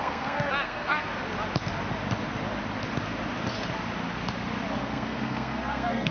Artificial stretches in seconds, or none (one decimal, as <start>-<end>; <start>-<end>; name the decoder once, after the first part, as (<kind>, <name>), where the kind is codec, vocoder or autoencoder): 0.0-1.1 (codec, SNAC); 4.8-6.1